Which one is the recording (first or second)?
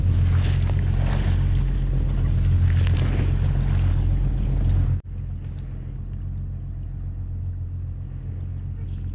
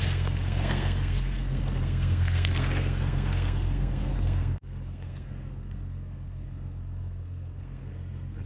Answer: first